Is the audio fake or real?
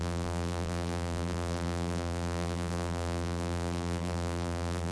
fake